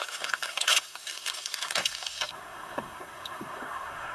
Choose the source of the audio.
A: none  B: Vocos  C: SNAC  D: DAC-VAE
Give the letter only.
C